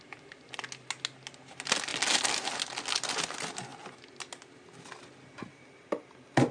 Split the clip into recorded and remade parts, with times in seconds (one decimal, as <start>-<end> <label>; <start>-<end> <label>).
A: 0.0-6.5 recorded